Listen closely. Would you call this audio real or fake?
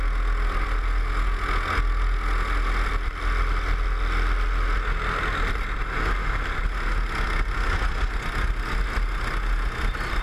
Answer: real